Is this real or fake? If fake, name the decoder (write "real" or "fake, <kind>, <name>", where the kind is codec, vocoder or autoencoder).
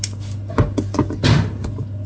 real